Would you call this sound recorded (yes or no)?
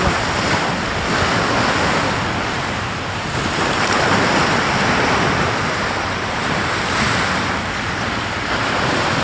yes